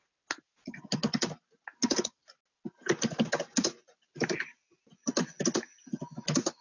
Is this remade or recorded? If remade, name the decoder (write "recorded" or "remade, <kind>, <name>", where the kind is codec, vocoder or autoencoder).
recorded